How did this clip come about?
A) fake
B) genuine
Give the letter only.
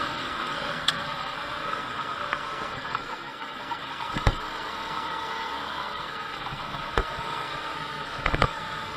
A